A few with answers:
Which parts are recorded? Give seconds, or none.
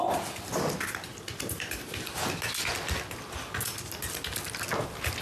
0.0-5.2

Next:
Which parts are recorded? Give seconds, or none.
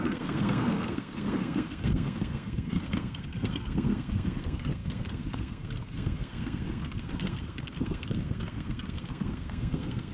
none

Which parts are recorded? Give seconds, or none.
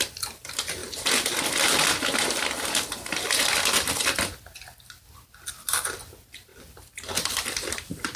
0.0-6.5; 7.7-8.2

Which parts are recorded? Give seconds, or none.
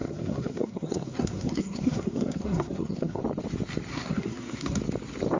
3.2-3.9; 4.8-5.4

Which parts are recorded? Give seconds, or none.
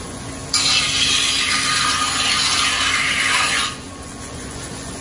0.4-3.4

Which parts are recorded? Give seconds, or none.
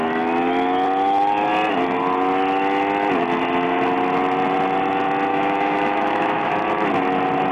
0.0-5.3; 6.5-7.5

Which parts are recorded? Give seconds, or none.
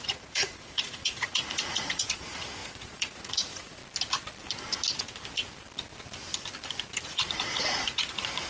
3.8-7.0